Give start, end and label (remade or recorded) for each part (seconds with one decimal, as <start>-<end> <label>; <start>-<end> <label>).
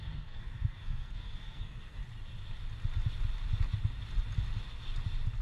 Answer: 0.0-2.0 remade; 2.0-5.4 recorded